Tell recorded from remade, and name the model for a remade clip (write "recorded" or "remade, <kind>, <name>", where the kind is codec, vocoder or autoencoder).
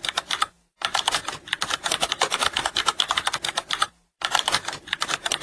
remade, vocoder, BigVGAN v2